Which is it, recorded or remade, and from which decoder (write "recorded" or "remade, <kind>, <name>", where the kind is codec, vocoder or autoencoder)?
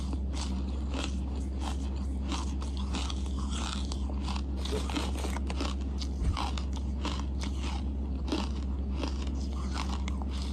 recorded